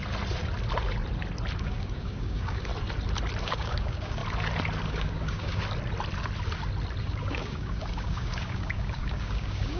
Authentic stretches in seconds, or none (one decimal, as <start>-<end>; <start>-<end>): 0.0-1.6; 2.7-3.4; 4.2-4.9; 5.6-7.0